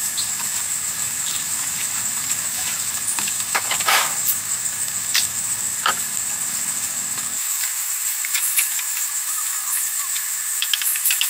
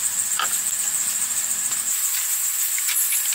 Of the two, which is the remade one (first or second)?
first